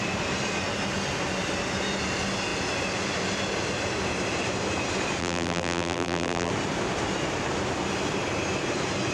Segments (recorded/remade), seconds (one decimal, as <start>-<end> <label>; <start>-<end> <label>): 0.0-5.2 recorded; 5.2-6.5 remade; 6.5-9.1 recorded